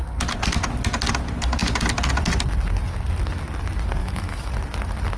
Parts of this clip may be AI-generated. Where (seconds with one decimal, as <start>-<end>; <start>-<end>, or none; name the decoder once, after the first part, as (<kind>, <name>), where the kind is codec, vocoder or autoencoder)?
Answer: 4.0-4.5 (autoencoder, DAC-VAE)